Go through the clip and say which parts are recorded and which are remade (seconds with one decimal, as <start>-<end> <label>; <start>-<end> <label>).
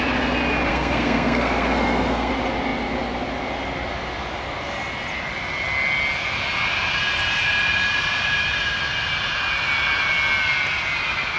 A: 0.0-0.7 recorded; 0.7-2.3 remade; 2.3-11.4 recorded